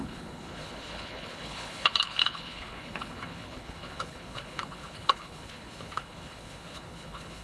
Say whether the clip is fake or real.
fake